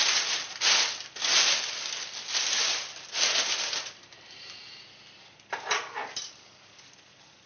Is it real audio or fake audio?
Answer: real